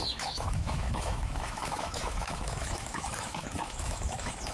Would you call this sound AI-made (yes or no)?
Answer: yes